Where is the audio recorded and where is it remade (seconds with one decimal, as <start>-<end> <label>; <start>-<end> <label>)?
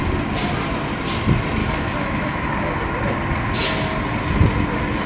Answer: 0.0-1.6 recorded; 1.6-2.5 remade; 2.5-5.1 recorded